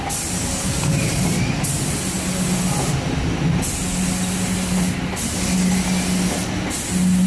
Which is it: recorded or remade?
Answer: recorded